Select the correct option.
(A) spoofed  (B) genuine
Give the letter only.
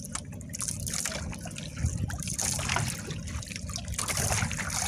B